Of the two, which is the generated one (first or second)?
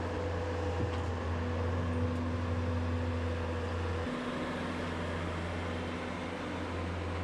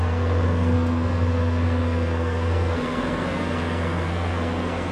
second